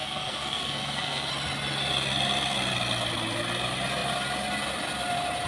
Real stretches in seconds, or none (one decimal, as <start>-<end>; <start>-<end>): 1.3-5.5

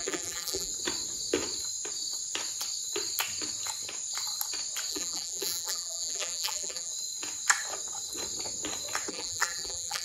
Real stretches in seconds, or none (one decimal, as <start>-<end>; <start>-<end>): 0.7-4.9; 6.9-9.1

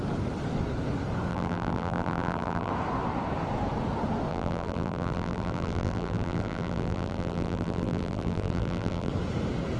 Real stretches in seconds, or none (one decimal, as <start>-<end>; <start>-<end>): 0.0-1.3; 2.7-4.3; 9.1-9.8

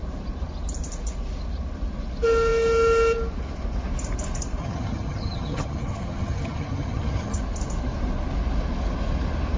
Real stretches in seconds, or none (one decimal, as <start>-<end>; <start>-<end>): 0.0-4.6; 7.4-9.6

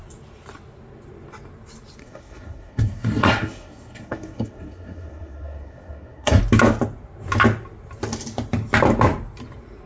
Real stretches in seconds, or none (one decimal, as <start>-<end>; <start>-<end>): 0.0-2.0; 6.4-9.9

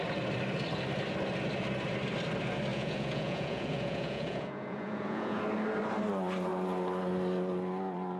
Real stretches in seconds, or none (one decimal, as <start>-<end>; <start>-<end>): 0.0-2.7; 5.4-8.2

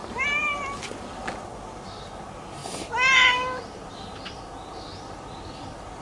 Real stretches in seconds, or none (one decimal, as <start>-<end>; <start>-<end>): 0.0-6.0